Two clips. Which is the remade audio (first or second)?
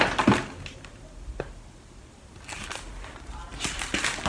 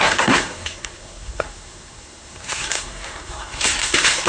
second